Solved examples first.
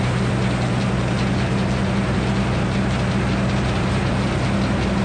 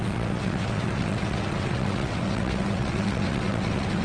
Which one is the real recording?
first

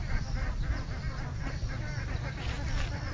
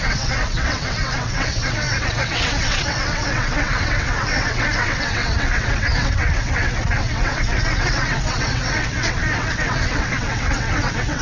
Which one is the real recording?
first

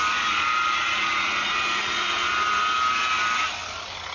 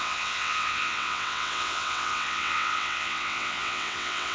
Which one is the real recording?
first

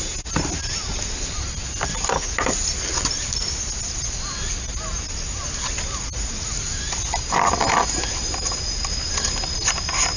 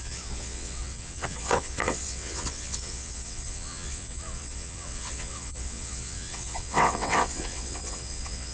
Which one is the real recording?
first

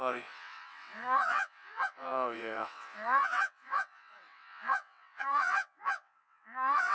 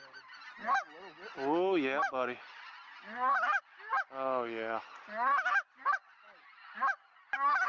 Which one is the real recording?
second